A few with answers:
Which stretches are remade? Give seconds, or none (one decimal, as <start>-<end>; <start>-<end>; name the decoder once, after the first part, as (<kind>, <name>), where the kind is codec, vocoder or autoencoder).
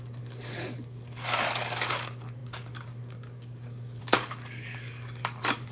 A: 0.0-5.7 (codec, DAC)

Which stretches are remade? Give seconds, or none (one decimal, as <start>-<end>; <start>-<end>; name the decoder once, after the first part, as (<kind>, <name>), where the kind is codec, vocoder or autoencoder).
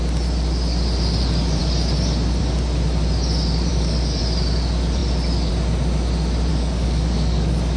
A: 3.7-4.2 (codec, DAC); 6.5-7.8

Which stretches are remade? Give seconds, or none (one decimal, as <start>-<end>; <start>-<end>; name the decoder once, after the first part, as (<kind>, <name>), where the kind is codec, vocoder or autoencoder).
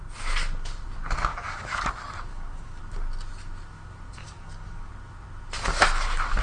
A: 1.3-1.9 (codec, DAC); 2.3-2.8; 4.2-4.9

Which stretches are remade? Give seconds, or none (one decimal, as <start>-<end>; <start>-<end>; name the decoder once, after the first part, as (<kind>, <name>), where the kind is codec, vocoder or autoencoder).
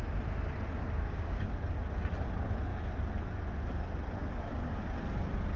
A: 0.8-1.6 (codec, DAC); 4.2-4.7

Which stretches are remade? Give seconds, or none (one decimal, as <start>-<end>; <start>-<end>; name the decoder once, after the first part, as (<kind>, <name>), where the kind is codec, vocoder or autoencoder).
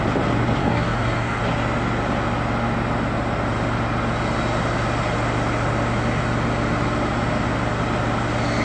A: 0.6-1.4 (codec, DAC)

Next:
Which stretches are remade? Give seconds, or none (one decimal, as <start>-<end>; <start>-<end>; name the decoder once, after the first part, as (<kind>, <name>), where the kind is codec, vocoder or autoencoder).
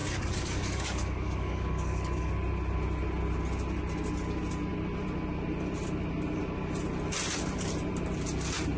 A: 0.0-2.3 (codec, DAC)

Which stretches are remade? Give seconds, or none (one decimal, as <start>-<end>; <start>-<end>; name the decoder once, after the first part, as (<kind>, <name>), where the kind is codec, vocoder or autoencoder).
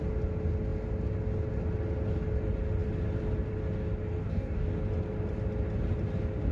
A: 4.2-4.7 (codec, DAC)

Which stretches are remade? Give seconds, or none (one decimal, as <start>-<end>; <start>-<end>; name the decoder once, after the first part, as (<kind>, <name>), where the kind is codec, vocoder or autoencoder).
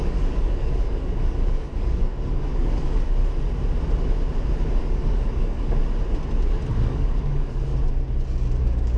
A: 0.0-3.2 (codec, DAC); 4.8-5.8; 6.7-7.7; 8.6-9.0